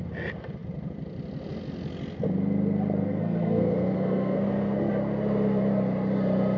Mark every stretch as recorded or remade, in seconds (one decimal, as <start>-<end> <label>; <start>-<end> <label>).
0.0-3.0 recorded; 3.0-4.9 remade; 4.9-6.6 recorded

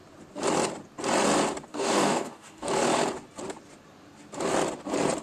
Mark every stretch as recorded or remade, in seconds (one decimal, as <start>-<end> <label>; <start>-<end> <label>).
0.0-1.7 recorded; 1.7-2.7 remade; 2.7-5.2 recorded

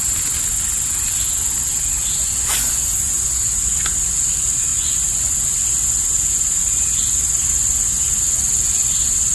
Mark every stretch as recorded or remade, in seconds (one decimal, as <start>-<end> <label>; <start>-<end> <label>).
0.0-2.2 recorded; 2.2-3.4 remade; 3.4-4.7 recorded; 4.7-5.3 remade; 5.3-9.3 recorded

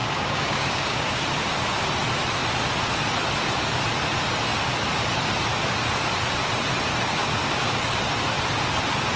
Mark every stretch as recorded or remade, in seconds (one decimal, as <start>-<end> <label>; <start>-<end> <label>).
0.0-1.2 remade; 1.2-7.2 recorded; 7.2-8.0 remade; 8.0-9.2 recorded

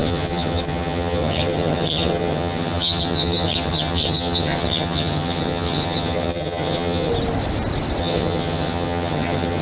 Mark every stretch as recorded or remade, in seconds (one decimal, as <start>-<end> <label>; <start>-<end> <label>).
0.0-7.1 remade; 7.1-8.0 recorded; 8.0-9.6 remade